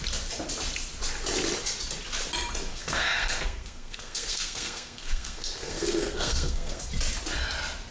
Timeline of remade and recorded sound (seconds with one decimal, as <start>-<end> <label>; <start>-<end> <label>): 0.0-2.7 recorded; 2.7-6.8 remade; 6.8-7.9 recorded